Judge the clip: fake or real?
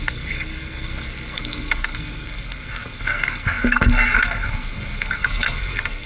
fake